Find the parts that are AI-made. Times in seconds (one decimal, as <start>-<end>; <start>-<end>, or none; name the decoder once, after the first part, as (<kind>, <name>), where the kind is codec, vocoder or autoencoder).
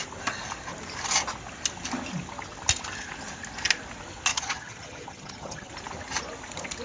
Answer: 4.3-5.7 (vocoder, HiFi-GAN)